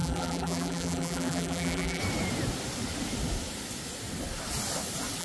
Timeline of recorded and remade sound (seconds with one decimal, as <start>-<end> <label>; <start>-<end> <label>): 0.0-2.0 remade; 2.0-5.2 recorded